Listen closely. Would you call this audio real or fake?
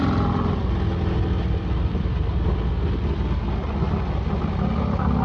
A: real